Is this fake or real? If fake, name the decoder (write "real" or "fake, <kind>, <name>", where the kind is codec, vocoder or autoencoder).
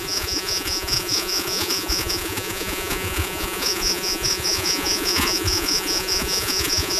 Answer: fake, vocoder, Vocos